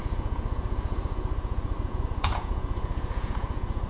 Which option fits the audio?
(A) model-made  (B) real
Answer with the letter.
A